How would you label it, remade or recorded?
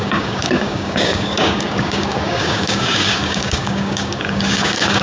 remade